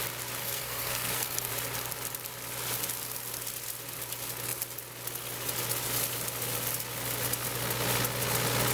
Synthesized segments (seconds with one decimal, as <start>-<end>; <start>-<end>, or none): 0.4-1.5